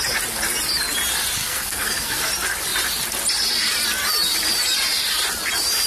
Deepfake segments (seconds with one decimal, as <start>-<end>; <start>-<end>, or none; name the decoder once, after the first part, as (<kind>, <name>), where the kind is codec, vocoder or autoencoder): 1.4-2.3 (codec, SNAC)